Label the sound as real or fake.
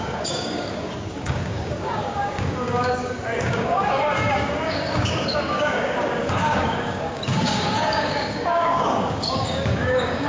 fake